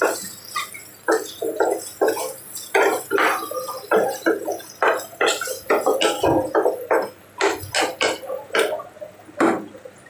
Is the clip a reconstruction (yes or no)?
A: no